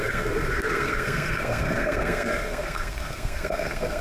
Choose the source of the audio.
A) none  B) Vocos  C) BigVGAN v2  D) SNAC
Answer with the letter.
D